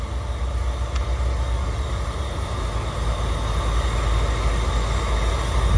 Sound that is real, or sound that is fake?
real